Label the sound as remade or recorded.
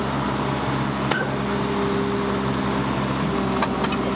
recorded